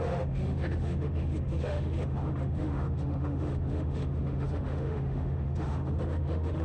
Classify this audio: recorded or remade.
remade